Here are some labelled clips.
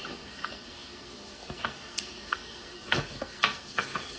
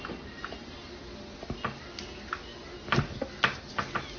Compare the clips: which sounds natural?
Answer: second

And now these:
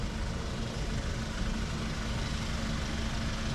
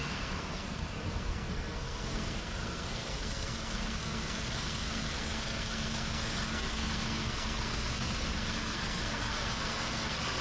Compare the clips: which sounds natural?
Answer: first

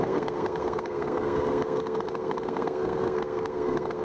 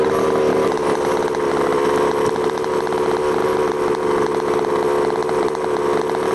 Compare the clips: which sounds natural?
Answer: second